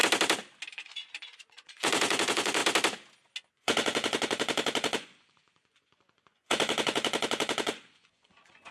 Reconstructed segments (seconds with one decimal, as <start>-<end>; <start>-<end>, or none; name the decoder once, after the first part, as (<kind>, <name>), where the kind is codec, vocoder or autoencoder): 0.7-2.6 (vocoder, Vocos); 3.5-8.7